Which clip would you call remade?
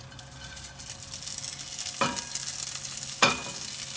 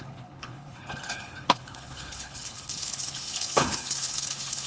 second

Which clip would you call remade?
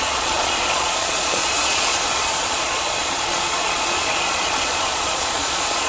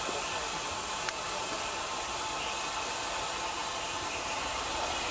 first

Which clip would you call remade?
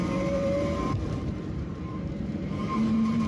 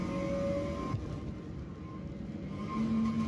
first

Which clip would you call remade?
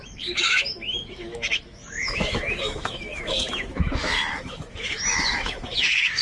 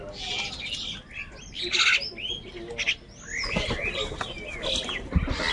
first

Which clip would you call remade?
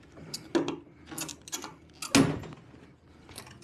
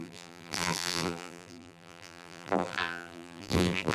second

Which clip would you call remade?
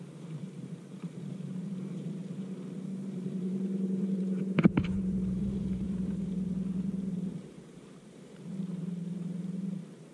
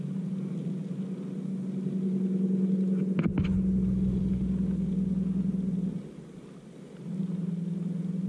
first